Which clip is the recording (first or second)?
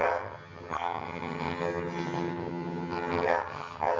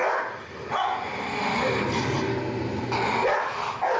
second